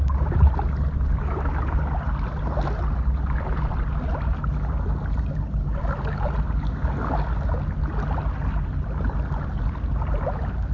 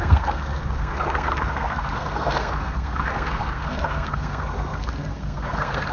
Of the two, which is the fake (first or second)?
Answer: second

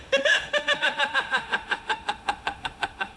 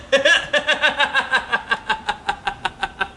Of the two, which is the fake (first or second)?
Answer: first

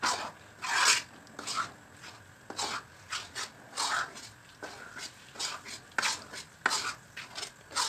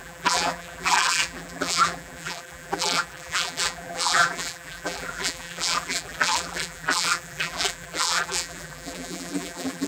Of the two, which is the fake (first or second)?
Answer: second